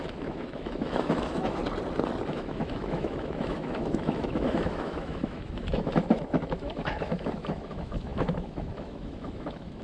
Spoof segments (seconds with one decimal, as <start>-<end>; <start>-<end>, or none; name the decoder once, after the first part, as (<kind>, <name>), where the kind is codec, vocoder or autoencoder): 0.0-1.6 (autoencoder, DAC-VAE); 2.3-9.8